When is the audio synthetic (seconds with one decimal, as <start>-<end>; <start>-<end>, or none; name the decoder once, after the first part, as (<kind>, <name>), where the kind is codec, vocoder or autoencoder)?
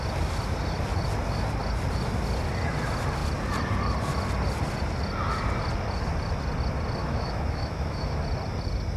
7.0-8.2 (autoencoder, DAC-VAE)